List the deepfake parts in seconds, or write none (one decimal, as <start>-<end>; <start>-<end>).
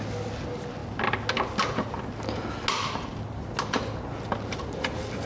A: none